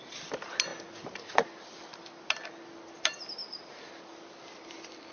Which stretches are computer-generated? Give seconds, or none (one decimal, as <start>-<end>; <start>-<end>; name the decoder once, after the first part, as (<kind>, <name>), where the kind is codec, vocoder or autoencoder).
none